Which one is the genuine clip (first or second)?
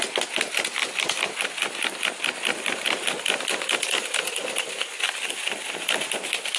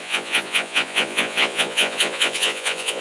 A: first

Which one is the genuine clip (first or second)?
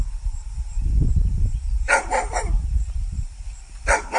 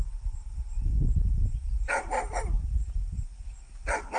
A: second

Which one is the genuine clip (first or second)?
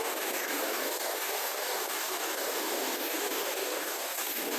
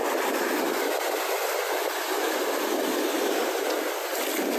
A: second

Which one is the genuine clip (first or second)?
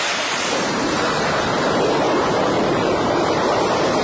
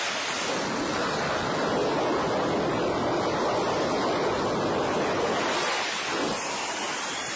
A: second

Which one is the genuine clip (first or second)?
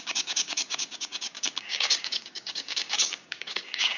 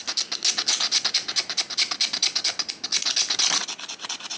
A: second